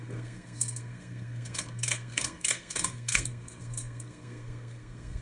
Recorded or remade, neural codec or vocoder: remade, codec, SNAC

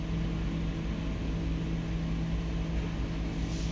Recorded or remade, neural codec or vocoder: recorded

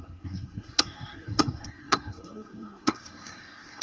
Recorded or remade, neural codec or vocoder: remade, codec, SNAC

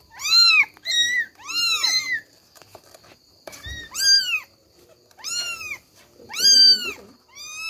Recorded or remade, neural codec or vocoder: remade, vocoder, BigVGAN v2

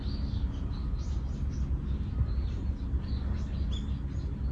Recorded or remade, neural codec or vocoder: recorded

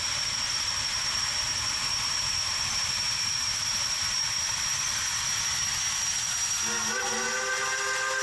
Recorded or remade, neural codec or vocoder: recorded